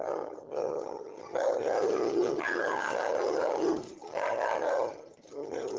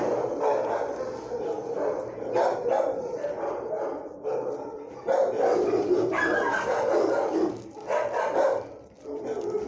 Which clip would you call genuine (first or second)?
second